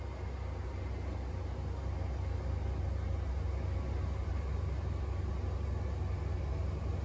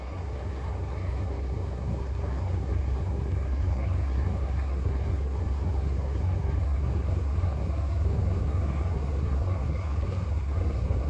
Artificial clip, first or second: second